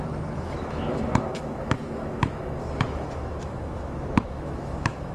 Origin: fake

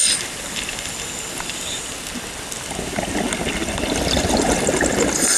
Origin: real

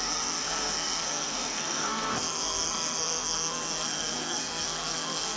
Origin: fake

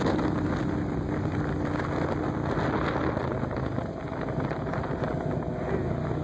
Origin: real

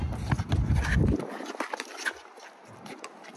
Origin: real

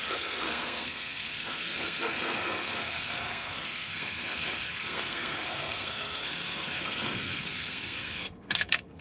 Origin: fake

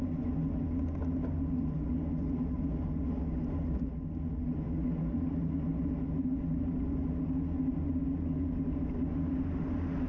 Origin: real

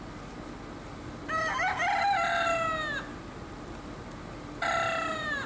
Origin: real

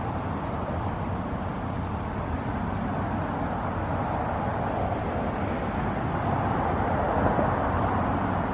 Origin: real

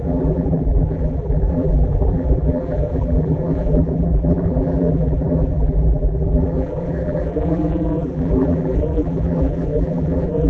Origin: fake